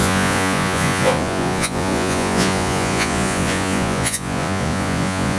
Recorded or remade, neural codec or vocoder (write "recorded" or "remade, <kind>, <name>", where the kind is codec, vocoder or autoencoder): remade, vocoder, Vocos